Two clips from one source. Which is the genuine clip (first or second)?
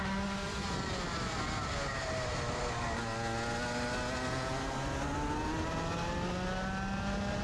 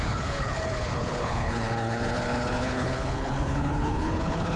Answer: first